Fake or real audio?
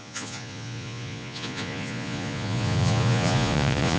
fake